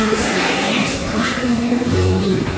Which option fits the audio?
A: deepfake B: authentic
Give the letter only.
A